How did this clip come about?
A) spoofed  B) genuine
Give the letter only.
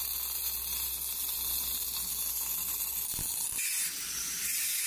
B